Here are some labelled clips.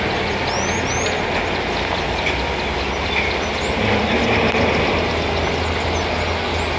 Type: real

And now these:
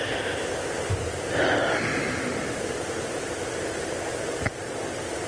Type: real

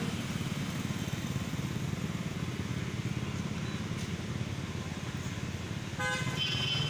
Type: real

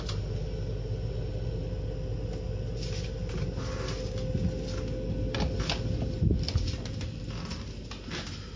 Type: real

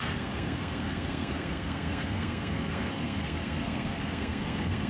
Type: fake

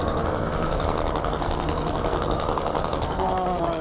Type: fake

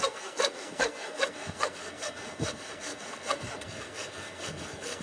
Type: fake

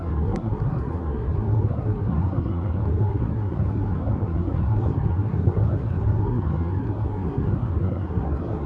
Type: fake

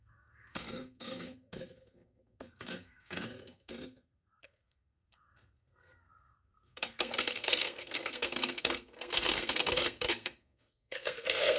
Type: fake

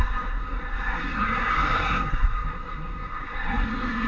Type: fake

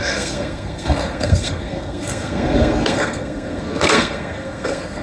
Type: fake